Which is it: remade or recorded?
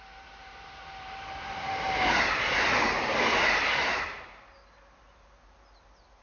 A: recorded